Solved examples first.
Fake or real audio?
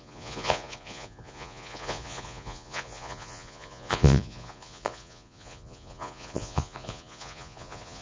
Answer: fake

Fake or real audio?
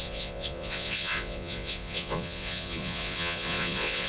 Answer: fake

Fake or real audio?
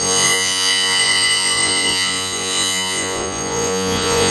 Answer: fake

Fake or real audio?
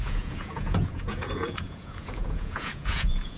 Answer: fake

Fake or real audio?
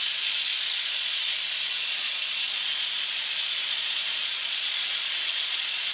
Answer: fake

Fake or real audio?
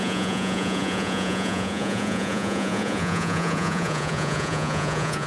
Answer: fake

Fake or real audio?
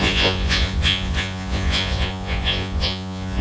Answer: fake